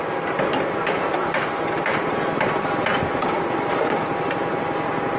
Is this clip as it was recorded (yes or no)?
yes